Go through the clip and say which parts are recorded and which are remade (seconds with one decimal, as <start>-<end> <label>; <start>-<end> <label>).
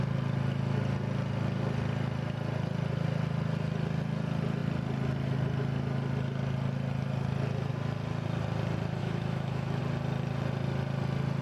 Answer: 0.0-9.0 recorded; 9.0-9.8 remade; 9.8-11.4 recorded